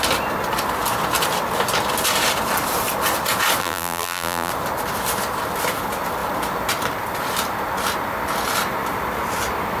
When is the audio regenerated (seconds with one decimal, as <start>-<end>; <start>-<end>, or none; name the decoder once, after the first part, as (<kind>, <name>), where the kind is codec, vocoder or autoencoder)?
3.6-4.5 (vocoder, BigVGAN v2)